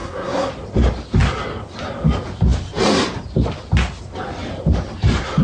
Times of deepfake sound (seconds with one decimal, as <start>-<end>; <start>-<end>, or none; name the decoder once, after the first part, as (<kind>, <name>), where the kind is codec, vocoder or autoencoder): 0.0-0.5 (codec, SNAC)